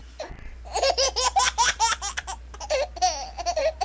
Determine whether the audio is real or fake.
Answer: fake